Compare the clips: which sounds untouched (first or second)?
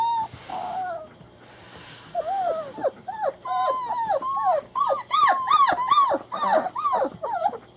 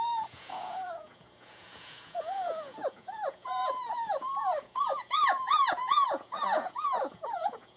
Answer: first